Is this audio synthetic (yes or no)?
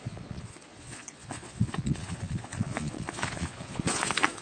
yes